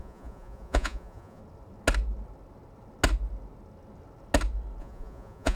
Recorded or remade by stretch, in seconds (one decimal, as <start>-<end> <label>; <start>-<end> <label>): 0.0-1.4 remade; 1.4-4.8 recorded; 4.8-5.6 remade